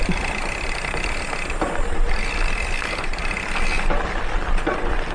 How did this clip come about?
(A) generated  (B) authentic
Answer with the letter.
B